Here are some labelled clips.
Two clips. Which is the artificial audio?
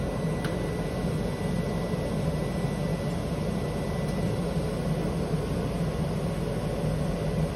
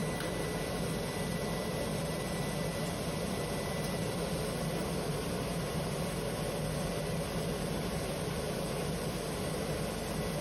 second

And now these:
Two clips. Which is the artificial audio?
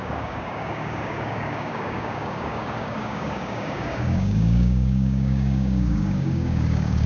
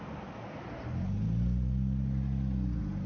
first